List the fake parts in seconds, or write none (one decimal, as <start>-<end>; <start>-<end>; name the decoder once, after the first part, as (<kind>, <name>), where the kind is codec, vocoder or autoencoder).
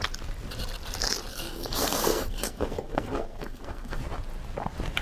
1.3-4.0 (codec, SNAC)